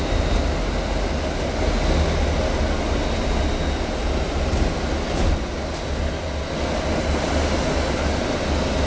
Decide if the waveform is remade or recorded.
recorded